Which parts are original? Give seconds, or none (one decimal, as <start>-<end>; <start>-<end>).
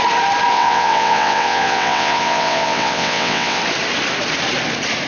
0.0-0.5; 3.6-5.1